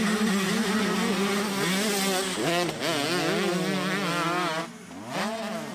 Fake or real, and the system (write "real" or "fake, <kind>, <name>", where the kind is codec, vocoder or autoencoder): real